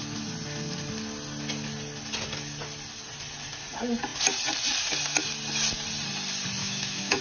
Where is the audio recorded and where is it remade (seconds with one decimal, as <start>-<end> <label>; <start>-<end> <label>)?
0.0-6.6 recorded; 6.6-7.2 remade